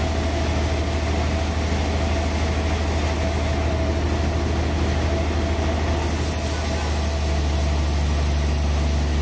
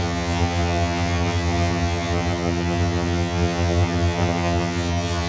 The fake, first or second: second